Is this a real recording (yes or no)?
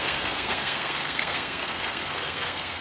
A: no